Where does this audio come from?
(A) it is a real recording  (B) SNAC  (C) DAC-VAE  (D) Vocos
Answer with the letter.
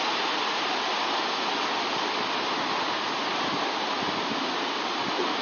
A